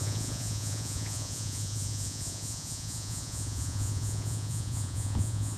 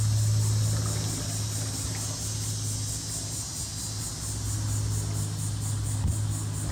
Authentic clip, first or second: second